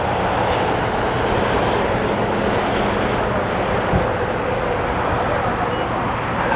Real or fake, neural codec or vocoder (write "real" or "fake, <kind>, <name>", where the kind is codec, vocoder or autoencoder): real